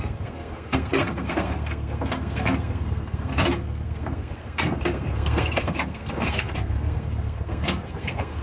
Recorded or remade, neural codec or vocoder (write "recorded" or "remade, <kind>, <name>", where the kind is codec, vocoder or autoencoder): remade, codec, SNAC